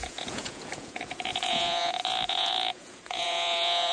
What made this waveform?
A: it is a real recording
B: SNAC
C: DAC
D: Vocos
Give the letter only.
D